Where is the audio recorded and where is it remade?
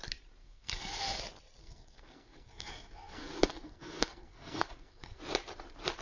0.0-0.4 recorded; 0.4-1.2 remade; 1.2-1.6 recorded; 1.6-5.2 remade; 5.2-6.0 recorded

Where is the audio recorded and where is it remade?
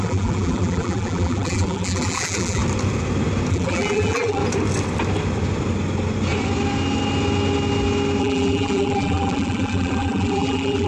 0.0-2.6 remade; 2.6-3.5 recorded; 3.5-4.4 remade; 4.4-8.2 recorded; 8.2-10.9 remade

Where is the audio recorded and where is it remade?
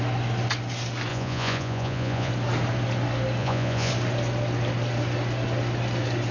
0.0-1.1 recorded; 1.1-2.3 remade; 2.3-3.4 recorded; 3.4-3.9 remade; 3.9-6.3 recorded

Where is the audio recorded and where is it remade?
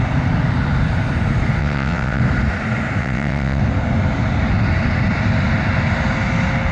0.0-1.6 recorded; 1.6-2.2 remade; 2.2-3.0 recorded; 3.0-3.6 remade; 3.6-6.7 recorded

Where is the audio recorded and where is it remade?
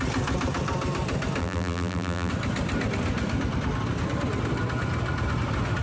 0.0-1.4 recorded; 1.4-2.3 remade; 2.3-5.8 recorded